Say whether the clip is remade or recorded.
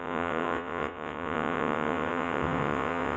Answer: remade